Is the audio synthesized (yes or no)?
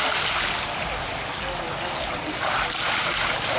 no